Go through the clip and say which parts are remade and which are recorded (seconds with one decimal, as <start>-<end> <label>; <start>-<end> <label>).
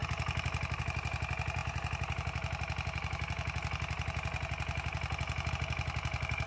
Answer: 0.0-6.5 recorded